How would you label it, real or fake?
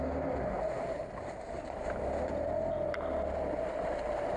real